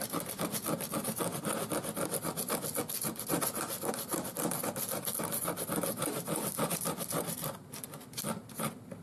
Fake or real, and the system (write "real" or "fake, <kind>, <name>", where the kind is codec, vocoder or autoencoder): real